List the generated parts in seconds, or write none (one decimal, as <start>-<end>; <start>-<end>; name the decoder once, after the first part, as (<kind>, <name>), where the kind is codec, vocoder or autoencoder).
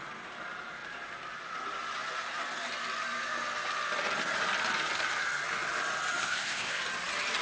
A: 6.2-6.8 (codec, ZipCodec)